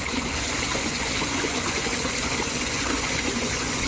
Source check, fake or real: fake